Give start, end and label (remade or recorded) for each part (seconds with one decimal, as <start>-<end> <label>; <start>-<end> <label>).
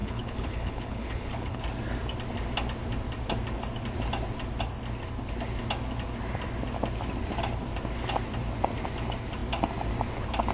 0.0-1.6 remade; 1.6-10.5 recorded